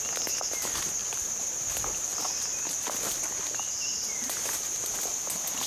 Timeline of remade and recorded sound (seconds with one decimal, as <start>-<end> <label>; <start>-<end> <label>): 0.0-1.0 recorded; 1.0-1.6 remade; 1.6-5.7 recorded